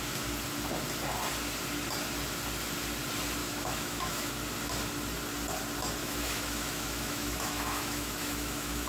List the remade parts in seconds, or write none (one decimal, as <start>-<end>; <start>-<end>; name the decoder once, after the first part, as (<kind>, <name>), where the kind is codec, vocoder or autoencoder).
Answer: 3.4-4.3 (autoencoder, DAC-VAE); 6.0-8.9